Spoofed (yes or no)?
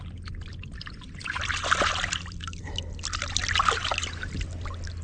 no